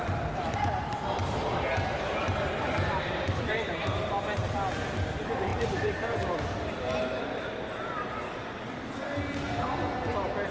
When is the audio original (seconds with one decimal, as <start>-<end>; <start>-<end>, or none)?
0.0-1.2; 1.7-5.5; 6.4-10.5